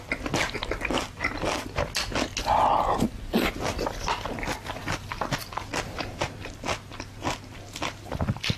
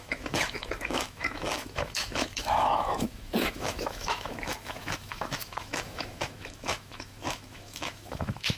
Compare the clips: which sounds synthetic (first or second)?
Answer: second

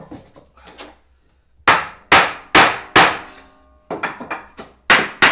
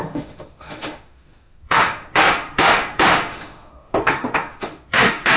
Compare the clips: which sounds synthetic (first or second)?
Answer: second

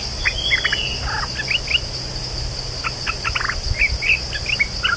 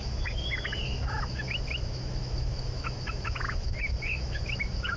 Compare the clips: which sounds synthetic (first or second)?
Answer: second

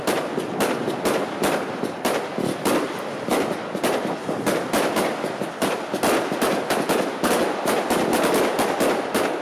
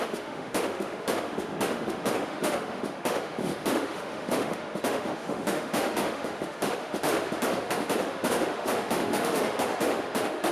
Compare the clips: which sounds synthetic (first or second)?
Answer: second